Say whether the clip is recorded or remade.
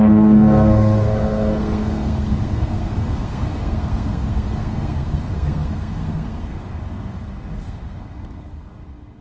remade